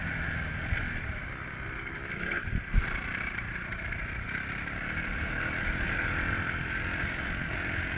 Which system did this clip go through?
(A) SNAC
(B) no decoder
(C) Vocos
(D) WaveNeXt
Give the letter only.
B